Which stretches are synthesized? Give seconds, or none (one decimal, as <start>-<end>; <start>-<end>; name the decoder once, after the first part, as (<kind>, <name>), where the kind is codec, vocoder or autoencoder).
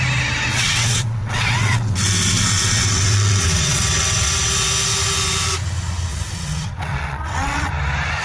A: 0.5-4.5 (vocoder, WaveNeXt); 6.1-7.7